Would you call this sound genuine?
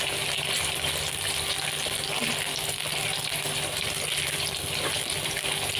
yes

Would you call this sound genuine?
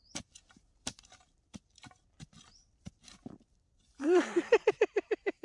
no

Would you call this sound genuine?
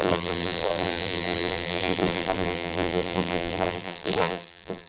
no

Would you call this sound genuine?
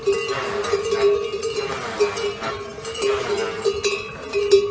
yes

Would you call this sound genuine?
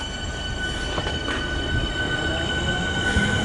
yes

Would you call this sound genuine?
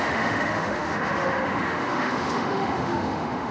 no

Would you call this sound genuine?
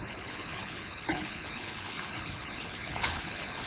no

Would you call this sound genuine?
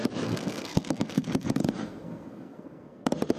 no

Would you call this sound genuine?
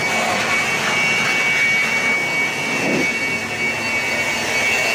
yes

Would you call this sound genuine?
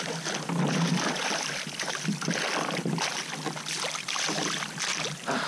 yes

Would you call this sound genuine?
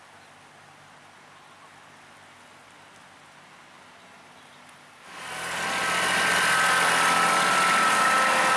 yes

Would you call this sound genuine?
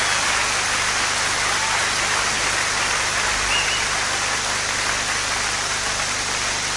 yes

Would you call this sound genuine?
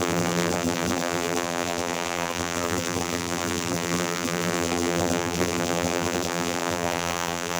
no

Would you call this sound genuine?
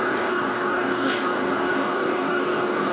no